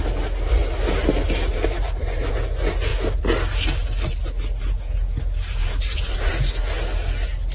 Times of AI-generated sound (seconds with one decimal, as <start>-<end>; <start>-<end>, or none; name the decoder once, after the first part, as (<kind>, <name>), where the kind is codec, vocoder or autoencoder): 1.5-2.3 (vocoder, BigVGAN v2); 5.6-6.4